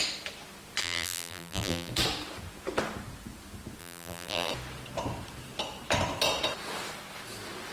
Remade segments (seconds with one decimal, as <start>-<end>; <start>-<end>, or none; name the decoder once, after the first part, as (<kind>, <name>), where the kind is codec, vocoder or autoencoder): 0.8-1.9 (vocoder, BigVGAN v2); 3.8-4.5